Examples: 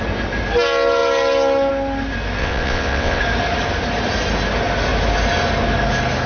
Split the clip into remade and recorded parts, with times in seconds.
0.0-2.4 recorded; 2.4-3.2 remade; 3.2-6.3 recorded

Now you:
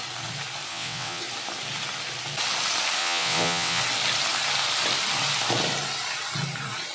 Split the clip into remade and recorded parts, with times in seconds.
0.0-0.7 recorded; 0.7-1.2 remade; 1.2-3.0 recorded; 3.0-3.8 remade; 3.8-6.9 recorded

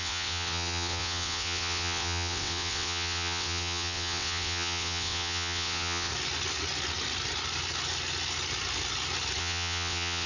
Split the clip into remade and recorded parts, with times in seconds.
0.0-6.1 remade; 6.1-9.4 recorded; 9.4-10.3 remade